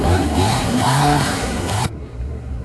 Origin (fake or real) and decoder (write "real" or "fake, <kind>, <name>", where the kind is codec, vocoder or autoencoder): fake, codec, SNAC